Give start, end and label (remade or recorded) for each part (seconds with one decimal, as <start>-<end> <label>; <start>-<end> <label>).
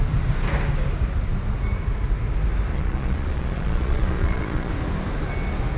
0.0-2.7 recorded; 2.7-4.7 remade; 4.7-5.8 recorded